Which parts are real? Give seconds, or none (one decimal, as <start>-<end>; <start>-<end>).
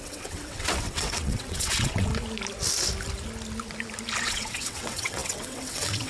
2.1-4.2